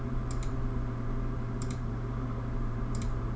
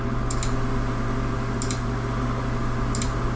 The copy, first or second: first